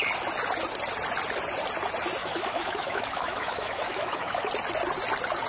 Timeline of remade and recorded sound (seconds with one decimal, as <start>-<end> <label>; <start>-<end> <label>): 0.0-2.2 recorded; 2.2-4.5 remade; 4.5-5.5 recorded